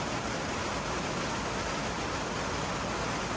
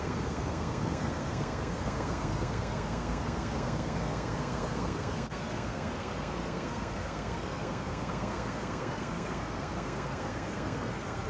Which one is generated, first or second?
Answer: second